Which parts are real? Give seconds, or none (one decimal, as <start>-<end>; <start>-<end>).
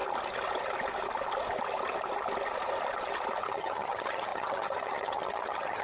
0.0-3.4